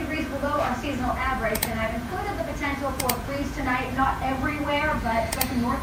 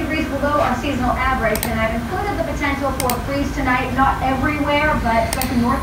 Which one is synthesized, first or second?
first